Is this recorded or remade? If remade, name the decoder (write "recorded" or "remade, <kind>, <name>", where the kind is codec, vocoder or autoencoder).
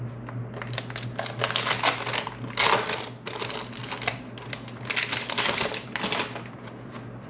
recorded